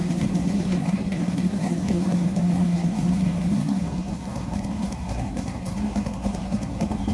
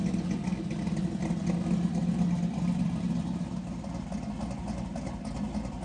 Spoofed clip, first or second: first